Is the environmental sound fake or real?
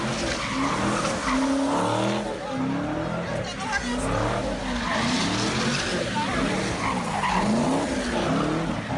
real